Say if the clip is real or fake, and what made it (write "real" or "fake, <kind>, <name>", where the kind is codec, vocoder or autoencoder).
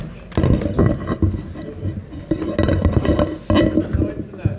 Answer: real